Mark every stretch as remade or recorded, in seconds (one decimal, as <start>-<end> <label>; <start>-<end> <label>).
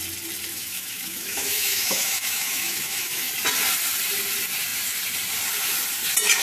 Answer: 0.0-0.5 recorded; 0.5-3.3 remade; 3.3-6.4 recorded